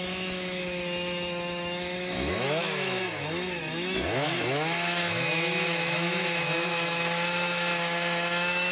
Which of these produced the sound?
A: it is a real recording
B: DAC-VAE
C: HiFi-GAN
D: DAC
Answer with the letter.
B